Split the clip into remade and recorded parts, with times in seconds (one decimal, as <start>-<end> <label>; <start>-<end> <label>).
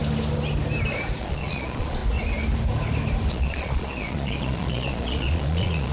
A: 0.0-1.2 recorded; 1.2-2.0 remade; 2.0-3.3 recorded; 3.3-5.9 remade